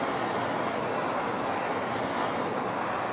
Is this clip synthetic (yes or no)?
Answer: no